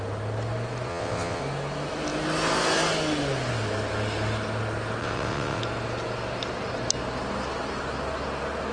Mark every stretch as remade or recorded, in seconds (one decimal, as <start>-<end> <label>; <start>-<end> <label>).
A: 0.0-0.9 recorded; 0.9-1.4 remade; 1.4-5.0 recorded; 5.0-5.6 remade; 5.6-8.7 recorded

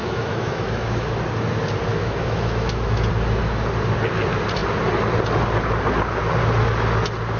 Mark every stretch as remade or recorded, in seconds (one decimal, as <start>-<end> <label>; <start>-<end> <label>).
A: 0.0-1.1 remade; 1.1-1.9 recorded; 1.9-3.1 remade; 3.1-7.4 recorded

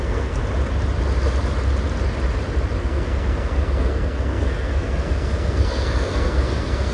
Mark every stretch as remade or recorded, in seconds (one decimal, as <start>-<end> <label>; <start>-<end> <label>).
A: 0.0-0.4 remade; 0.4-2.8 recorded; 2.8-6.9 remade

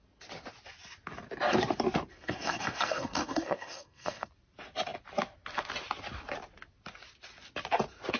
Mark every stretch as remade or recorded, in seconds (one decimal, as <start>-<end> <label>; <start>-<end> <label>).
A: 0.0-2.1 recorded; 2.1-4.3 remade; 4.3-8.2 recorded

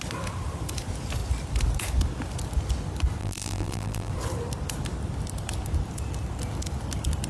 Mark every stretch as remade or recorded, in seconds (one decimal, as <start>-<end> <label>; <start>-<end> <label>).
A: 0.0-3.2 recorded; 3.2-4.1 remade; 4.1-7.3 recorded

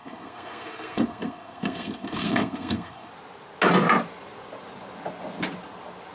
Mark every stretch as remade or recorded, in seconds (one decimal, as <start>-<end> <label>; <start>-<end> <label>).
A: 0.0-3.1 remade; 3.1-6.1 recorded

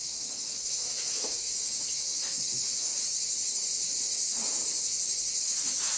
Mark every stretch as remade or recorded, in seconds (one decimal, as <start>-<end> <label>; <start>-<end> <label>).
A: 0.0-2.9 remade; 2.9-4.0 recorded; 4.0-4.6 remade; 4.6-5.4 recorded; 5.4-6.0 remade

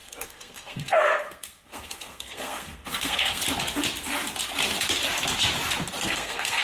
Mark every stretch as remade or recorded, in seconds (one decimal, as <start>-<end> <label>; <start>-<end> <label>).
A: 0.0-3.4 remade; 3.4-6.0 recorded; 6.0-6.6 remade